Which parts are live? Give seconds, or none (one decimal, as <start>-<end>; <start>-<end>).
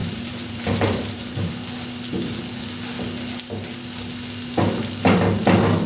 1.5-5.9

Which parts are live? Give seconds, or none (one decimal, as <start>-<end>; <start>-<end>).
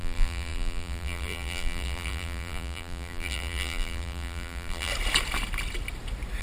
4.9-6.4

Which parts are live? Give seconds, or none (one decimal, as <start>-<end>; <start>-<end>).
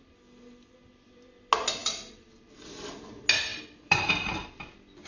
0.0-1.8; 2.9-3.5; 4.1-5.1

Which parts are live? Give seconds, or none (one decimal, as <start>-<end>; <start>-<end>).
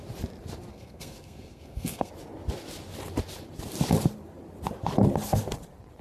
0.0-0.7; 2.1-6.0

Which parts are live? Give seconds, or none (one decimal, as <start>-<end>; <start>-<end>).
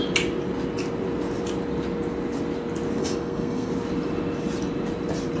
0.0-3.0; 3.7-5.4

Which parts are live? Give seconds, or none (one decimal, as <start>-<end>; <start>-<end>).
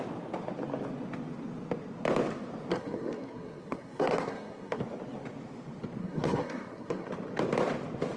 0.0-2.7; 4.8-6.0; 7.1-8.2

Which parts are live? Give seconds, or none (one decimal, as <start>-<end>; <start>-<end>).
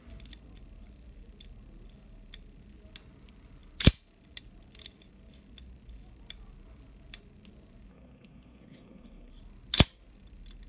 0.0-7.9; 9.3-10.7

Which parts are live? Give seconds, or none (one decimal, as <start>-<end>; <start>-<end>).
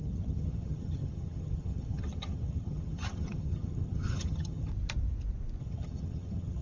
4.7-5.6